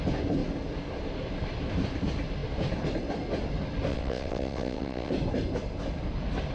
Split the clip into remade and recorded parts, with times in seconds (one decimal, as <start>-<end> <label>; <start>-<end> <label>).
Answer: 0.0-3.9 recorded; 3.9-5.1 remade; 5.1-6.5 recorded